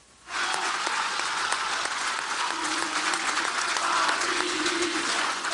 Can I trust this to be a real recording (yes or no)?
no